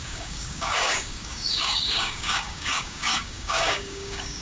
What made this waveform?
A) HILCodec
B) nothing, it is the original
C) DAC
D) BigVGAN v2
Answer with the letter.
C